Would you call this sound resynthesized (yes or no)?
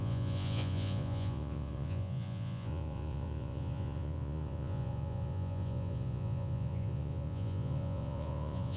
yes